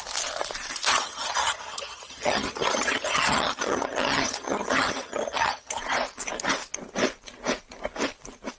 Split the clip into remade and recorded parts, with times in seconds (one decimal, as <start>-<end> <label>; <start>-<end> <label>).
0.0-0.9 recorded; 0.9-5.8 remade; 5.8-8.6 recorded